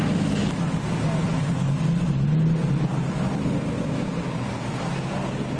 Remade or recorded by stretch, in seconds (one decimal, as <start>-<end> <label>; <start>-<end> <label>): 0.0-5.6 recorded